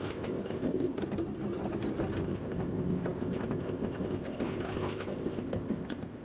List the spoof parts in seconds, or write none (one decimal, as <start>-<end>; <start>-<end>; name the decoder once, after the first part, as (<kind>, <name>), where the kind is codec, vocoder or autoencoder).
0.0-1.0 (codec, ZipCodec); 2.2-6.2